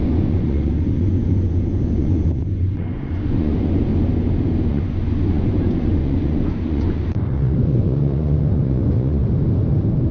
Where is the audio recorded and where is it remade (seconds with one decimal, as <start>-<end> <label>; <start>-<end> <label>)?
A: 0.0-3.9 remade; 3.9-4.6 recorded; 4.6-9.2 remade; 9.2-10.1 recorded